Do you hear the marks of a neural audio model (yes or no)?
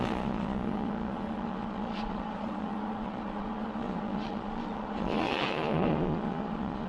yes